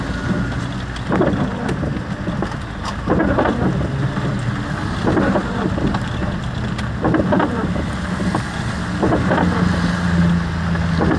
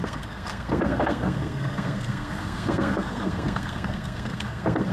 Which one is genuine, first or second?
first